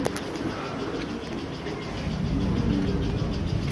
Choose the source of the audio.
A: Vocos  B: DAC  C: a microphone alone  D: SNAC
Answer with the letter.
C